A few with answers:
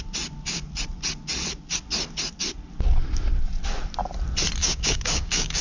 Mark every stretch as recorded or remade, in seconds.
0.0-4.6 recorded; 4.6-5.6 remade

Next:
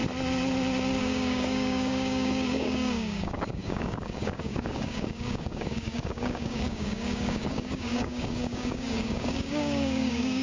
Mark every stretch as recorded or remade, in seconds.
0.0-1.0 recorded; 1.0-10.4 remade

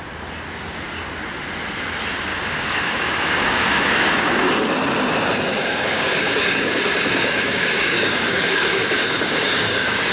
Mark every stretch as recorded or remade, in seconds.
0.0-2.3 recorded; 2.3-4.5 remade; 4.5-5.5 recorded; 5.5-10.1 remade

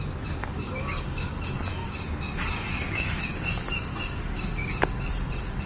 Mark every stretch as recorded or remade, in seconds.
0.0-0.4 recorded; 0.4-1.3 remade; 1.3-1.8 recorded; 1.8-5.1 remade; 5.1-5.7 recorded

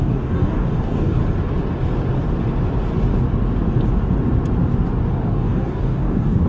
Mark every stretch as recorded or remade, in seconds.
0.0-1.2 remade; 1.2-5.1 recorded; 5.1-6.5 remade